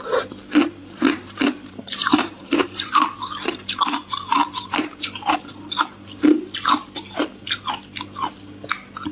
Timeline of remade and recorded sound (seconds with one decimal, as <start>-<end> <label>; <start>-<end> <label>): 0.0-0.8 recorded; 0.8-5.5 remade; 5.5-9.1 recorded